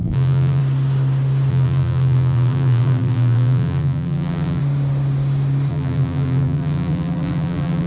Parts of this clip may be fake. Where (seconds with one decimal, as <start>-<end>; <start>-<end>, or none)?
0.0-0.6; 1.5-4.6; 5.7-7.9